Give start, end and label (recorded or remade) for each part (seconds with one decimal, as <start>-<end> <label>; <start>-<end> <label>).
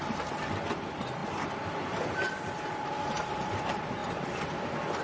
0.0-1.2 recorded; 1.2-2.9 remade; 2.9-4.0 recorded; 4.0-5.0 remade